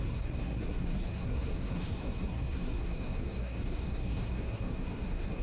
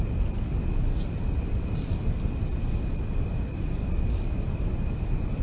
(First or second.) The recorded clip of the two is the second